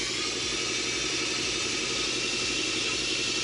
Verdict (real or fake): real